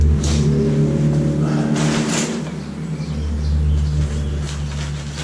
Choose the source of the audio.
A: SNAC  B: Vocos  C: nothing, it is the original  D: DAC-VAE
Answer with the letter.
C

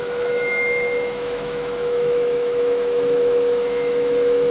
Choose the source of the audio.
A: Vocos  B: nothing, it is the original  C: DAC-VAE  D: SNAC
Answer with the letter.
C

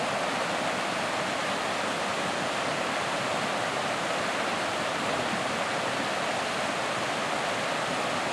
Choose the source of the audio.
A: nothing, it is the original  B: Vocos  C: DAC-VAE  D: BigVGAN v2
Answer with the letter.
A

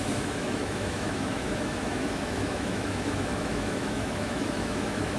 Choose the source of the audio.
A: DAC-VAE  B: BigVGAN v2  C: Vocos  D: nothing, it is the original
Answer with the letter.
A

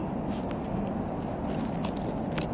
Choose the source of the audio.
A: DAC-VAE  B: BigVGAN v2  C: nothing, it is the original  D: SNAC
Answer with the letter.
C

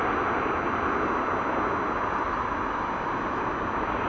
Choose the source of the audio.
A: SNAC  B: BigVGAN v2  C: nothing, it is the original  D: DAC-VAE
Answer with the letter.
C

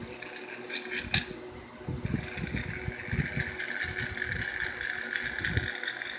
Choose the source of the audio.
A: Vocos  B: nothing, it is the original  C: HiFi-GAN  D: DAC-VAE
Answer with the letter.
B